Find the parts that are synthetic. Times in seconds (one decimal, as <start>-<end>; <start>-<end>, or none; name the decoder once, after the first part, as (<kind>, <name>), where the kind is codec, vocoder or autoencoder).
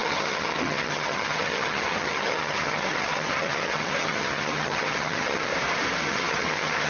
0.0-5.5 (vocoder, HiFi-GAN); 6.0-6.9